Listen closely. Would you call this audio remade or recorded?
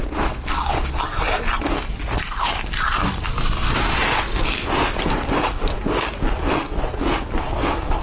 recorded